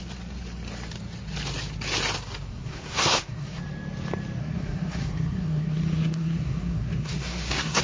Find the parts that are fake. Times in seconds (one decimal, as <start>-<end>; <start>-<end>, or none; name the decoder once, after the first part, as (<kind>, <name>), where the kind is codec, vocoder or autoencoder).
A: 2.5-3.6 (codec, SNAC); 4.4-7.8